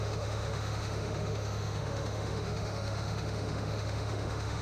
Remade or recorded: remade